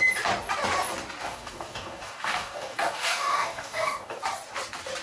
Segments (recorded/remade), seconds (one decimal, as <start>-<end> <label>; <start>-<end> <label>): 0.0-1.2 recorded; 1.2-4.2 remade; 4.2-5.0 recorded